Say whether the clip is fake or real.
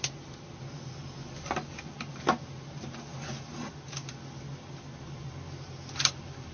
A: real